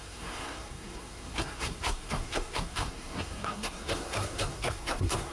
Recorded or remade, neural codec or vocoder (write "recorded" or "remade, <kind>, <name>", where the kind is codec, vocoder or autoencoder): remade, codec, SNAC